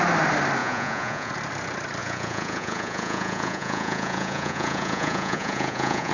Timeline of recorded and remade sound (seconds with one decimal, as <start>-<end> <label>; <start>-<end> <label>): 0.0-0.6 recorded; 0.6-1.3 remade; 1.3-2.0 recorded; 2.0-6.1 remade